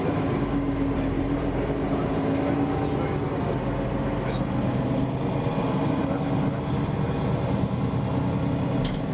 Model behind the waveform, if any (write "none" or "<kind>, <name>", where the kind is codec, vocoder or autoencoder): none